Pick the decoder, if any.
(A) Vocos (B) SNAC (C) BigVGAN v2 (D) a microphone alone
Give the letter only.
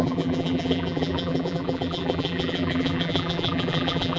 C